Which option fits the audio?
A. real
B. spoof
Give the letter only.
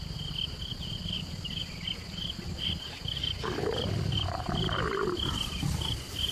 A